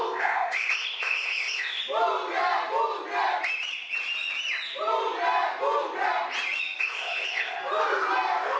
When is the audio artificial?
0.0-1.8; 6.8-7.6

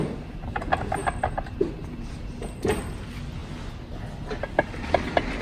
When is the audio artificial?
1.0-3.0

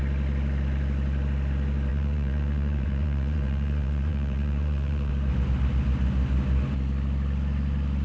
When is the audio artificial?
1.9-5.1